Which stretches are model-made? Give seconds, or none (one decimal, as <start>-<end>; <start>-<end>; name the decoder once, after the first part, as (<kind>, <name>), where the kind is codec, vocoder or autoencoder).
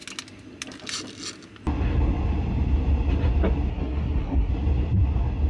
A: 3.7-4.5 (codec, SNAC)